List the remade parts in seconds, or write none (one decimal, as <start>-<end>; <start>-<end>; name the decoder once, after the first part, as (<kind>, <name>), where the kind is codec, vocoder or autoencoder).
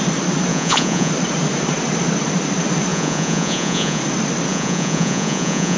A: 0.5-1.1 (vocoder, Vocos); 2.9-4.0; 4.5-5.8